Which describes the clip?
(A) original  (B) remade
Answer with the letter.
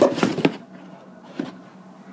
A